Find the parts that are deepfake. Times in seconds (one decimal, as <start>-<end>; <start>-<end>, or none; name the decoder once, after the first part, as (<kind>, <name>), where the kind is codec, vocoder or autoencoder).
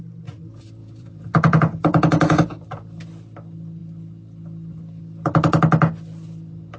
0.8-2.6 (vocoder, Vocos)